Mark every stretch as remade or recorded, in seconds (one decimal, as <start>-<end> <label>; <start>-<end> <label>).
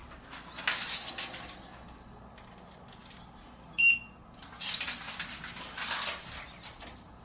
0.0-7.2 recorded